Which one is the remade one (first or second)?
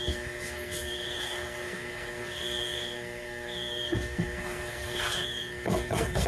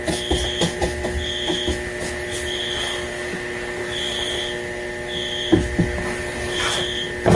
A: first